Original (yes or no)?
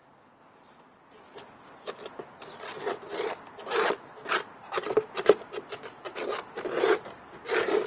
yes